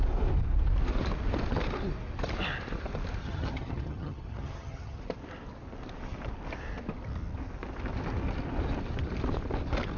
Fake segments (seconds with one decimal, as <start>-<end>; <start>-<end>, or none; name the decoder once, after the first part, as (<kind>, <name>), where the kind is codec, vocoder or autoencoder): 3.2-5.0 (vocoder, HiFi-GAN)